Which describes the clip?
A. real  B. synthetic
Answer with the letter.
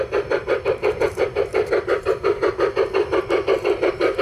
B